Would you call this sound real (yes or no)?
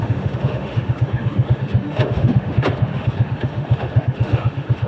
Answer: no